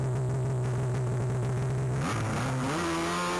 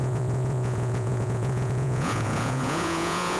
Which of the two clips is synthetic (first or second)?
second